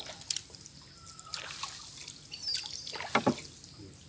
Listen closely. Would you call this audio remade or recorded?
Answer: recorded